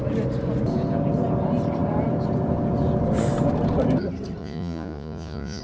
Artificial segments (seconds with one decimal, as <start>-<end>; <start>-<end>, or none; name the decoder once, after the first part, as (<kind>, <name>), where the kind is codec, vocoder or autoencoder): 4.4-5.6 (vocoder, Vocos)